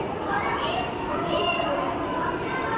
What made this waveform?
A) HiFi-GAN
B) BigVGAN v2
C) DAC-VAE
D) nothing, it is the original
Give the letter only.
B